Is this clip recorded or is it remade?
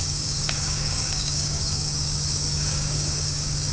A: remade